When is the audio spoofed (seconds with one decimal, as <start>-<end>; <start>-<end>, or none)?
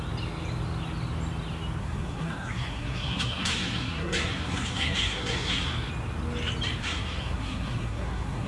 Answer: 1.8-5.7; 6.8-8.5